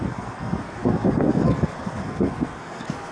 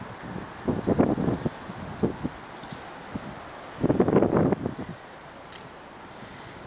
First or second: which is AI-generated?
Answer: first